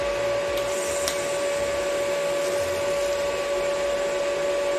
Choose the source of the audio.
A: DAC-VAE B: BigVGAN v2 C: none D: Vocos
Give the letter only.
C